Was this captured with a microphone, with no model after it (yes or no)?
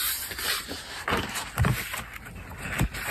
yes